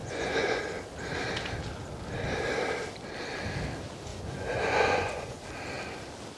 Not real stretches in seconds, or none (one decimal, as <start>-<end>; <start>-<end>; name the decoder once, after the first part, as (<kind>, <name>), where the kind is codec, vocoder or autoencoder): 0.0-0.6 (vocoder, Vocos); 4.1-5.4